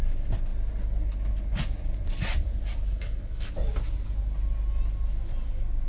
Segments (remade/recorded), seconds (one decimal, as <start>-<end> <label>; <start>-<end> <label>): 0.0-2.9 recorded; 2.9-3.5 remade; 3.5-5.9 recorded